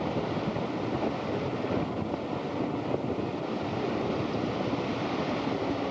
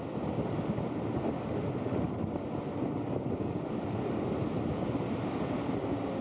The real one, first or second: second